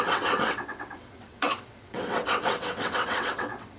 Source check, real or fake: fake